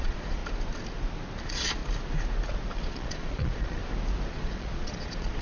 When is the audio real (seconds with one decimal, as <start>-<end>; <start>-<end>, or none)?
0.4-1.4; 1.8-2.8; 3.8-4.3

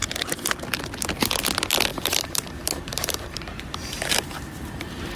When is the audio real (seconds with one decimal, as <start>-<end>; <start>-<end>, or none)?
0.0-1.9; 4.8-5.2